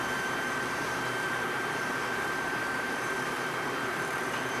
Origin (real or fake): fake